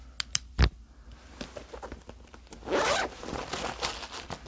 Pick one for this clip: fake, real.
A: real